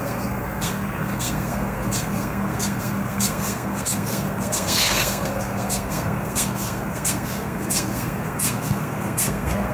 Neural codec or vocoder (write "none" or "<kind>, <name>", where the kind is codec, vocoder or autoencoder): codec, SNAC